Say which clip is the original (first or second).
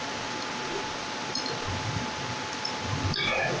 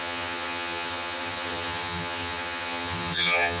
first